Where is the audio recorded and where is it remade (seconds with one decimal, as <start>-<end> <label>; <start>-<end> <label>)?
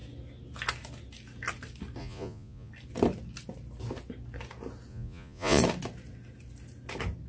0.0-2.0 recorded; 2.0-2.7 remade; 2.7-4.9 recorded; 4.9-5.6 remade; 5.6-7.3 recorded